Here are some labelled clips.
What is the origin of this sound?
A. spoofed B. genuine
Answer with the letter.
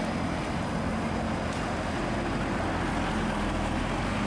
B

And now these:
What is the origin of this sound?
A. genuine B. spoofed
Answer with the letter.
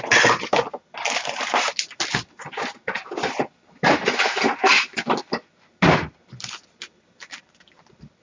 A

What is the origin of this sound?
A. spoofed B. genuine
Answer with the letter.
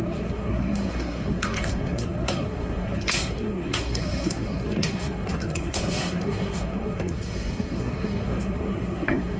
A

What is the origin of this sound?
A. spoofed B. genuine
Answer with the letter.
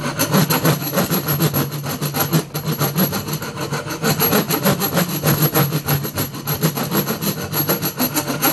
B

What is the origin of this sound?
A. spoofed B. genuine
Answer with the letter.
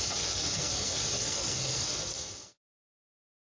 A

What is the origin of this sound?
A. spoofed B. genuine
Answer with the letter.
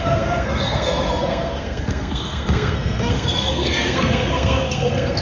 A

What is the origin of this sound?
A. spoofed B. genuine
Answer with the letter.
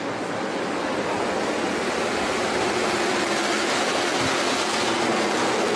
B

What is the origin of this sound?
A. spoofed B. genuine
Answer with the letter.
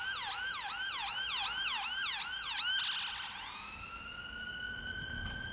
B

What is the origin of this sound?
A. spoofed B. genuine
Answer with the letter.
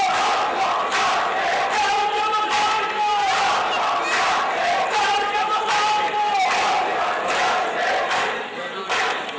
B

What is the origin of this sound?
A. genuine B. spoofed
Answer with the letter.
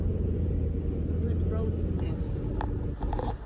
A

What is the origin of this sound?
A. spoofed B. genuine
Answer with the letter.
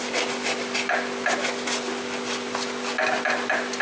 B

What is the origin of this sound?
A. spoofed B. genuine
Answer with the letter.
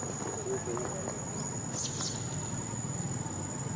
B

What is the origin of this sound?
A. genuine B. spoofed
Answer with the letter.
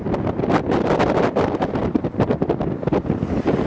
A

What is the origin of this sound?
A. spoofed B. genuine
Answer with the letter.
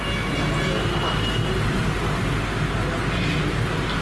B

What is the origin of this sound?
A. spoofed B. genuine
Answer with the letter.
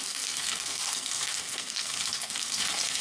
A